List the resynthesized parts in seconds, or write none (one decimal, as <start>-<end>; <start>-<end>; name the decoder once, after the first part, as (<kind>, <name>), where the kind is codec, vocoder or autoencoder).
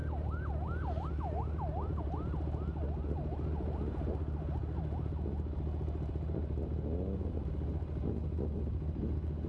none